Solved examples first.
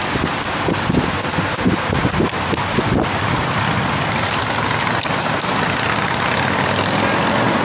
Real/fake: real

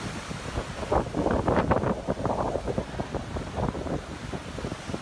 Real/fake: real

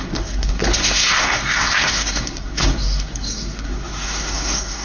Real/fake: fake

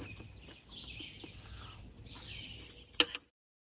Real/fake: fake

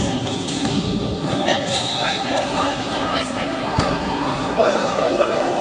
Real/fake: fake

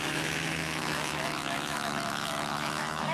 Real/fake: fake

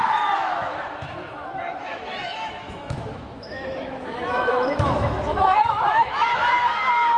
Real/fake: fake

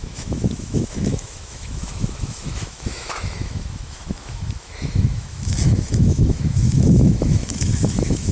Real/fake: fake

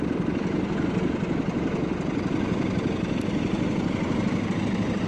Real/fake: real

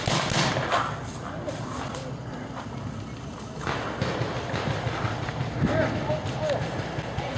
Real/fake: real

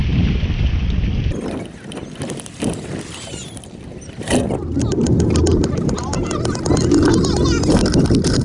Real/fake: real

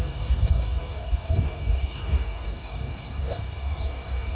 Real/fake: fake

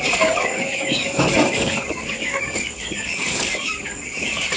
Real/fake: fake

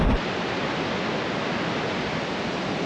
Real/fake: real